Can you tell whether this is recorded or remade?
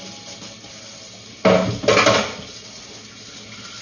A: recorded